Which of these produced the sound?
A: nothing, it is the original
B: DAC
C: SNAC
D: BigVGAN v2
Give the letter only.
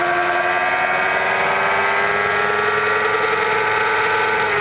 A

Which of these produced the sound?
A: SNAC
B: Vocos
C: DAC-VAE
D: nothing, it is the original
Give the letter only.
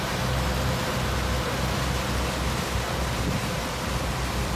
D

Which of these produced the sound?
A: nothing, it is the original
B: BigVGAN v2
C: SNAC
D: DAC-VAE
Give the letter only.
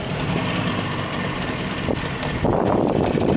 A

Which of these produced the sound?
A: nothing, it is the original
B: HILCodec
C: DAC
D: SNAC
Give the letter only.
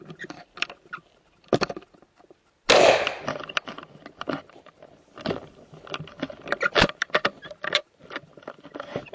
A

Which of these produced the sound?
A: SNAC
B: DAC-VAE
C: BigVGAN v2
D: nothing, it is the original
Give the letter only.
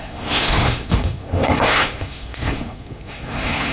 A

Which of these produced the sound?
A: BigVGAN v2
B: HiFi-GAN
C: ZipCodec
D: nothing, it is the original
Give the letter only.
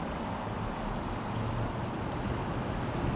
D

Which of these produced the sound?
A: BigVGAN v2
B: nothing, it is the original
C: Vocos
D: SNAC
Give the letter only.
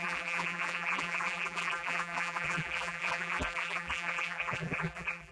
A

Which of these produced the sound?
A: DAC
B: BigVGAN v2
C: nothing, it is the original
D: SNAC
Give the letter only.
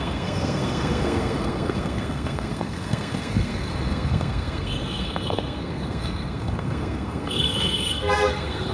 D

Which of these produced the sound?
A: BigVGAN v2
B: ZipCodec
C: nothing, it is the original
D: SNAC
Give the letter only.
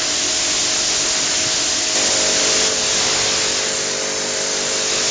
C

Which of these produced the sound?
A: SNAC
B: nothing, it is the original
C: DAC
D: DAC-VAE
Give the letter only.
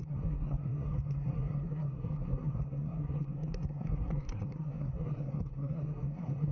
A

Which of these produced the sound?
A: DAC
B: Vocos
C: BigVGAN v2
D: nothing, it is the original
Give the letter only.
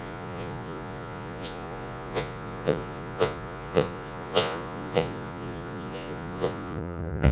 B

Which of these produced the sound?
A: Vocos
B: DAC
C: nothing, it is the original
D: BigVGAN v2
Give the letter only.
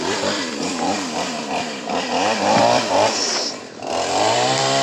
D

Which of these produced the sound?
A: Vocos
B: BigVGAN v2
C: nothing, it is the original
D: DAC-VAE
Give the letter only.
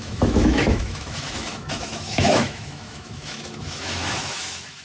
D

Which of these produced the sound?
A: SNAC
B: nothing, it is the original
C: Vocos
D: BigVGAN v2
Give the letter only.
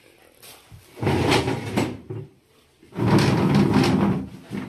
B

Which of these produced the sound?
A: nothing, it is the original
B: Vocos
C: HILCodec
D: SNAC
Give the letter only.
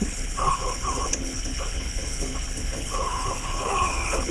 C